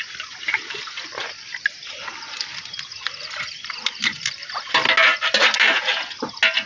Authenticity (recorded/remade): recorded